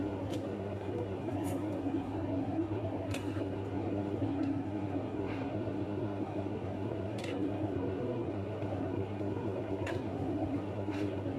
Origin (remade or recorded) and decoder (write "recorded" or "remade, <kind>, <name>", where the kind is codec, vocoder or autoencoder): remade, codec, SNAC